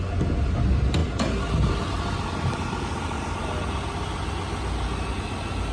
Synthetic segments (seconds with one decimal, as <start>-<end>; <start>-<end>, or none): none